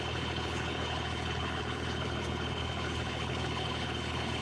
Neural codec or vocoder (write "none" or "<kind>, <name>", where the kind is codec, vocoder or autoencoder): codec, HILCodec